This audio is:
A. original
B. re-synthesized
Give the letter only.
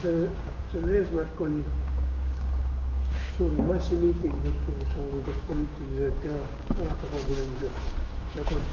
B